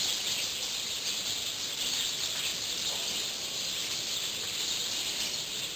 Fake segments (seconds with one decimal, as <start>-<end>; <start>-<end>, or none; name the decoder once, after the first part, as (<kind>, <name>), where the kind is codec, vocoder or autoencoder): none